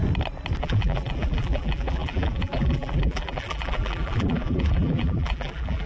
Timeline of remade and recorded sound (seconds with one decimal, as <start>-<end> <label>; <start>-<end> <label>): 0.0-0.6 recorded; 0.6-5.9 remade